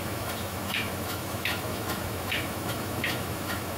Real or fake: fake